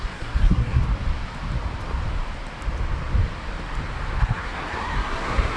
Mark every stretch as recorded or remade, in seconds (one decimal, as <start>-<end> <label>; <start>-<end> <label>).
0.0-0.8 remade; 0.8-4.2 recorded; 4.2-5.6 remade